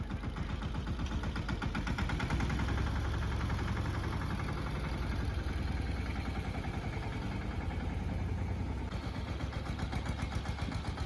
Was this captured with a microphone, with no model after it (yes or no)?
yes